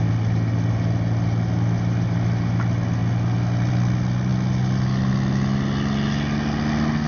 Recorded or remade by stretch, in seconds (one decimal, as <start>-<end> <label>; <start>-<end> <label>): 0.0-7.1 recorded